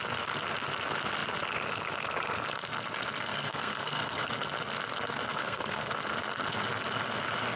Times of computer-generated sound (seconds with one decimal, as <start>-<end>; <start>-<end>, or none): 3.3-4.3; 5.3-5.9

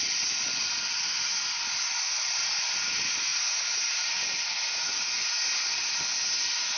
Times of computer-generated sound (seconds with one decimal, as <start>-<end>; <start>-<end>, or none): none

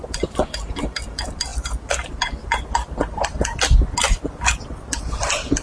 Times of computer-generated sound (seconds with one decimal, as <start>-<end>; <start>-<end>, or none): none

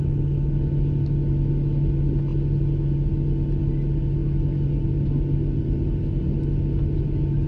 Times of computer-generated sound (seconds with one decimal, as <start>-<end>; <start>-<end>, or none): none

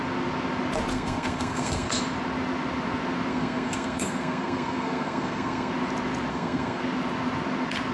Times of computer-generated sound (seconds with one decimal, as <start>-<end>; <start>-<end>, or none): 0.9-2.0; 3.3-5.7; 6.3-6.8

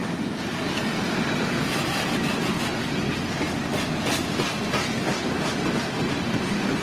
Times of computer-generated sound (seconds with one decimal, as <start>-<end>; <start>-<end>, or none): none

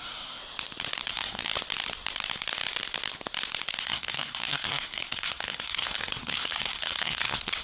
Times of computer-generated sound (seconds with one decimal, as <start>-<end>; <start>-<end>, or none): 0.0-0.4; 1.1-1.5; 3.8-7.6

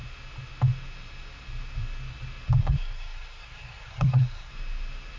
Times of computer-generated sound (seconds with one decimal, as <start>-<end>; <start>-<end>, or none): 2.6-4.5